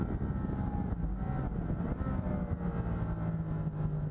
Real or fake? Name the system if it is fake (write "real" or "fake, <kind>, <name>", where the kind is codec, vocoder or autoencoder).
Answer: real